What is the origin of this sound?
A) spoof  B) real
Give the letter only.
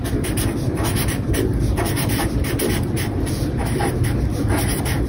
A